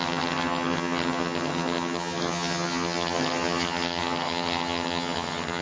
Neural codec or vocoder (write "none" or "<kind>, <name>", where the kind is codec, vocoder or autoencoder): vocoder, HiFi-GAN